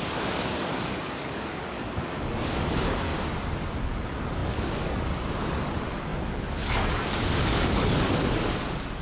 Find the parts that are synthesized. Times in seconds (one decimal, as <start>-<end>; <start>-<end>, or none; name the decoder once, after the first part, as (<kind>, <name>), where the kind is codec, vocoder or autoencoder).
0.0-3.1 (codec, DAC); 3.8-9.0